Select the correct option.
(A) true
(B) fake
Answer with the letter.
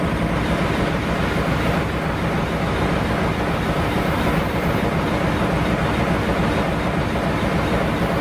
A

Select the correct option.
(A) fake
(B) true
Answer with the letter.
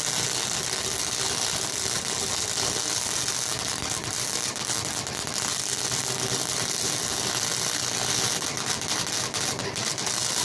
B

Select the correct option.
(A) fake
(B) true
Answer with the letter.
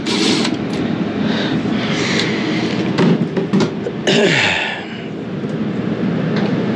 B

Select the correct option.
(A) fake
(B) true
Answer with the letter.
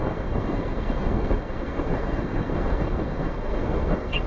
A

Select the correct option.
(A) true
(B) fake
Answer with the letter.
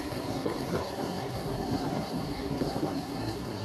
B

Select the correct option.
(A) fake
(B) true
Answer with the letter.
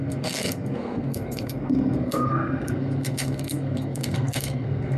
A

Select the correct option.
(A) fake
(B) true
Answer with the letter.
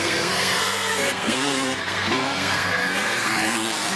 A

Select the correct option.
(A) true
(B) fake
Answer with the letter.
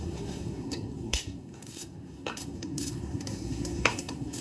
B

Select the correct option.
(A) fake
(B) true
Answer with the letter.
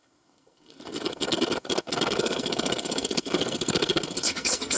A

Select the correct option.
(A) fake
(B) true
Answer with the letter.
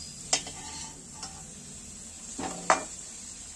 B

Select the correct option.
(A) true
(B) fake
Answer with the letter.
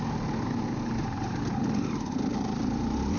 A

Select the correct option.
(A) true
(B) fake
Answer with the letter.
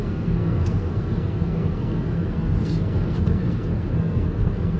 B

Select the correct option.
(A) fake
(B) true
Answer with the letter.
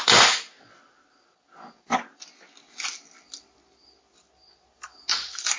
B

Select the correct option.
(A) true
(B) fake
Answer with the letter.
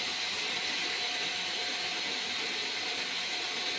A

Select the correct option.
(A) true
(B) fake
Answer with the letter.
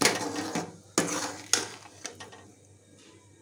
A